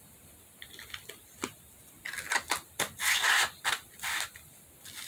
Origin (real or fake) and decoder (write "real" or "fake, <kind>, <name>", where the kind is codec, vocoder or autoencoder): real